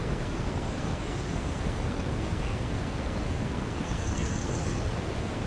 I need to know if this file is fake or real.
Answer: fake